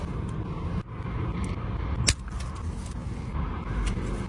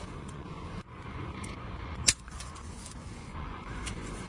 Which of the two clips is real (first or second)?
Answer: first